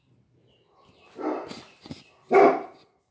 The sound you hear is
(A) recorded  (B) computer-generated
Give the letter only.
A